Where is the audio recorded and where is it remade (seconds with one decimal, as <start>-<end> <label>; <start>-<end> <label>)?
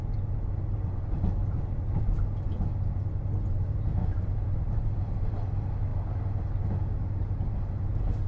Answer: 0.0-1.4 recorded; 1.4-2.3 remade; 2.3-4.0 recorded; 4.0-5.2 remade; 5.2-8.3 recorded